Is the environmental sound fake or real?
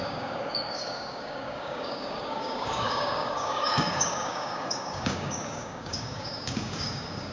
fake